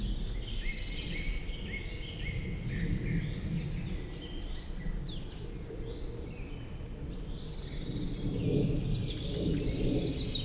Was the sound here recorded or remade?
recorded